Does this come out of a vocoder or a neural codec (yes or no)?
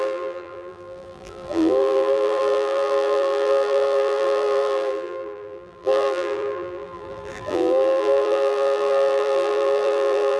yes